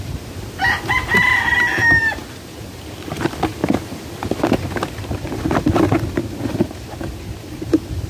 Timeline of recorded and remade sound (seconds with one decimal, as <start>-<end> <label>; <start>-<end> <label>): 0.0-8.1 recorded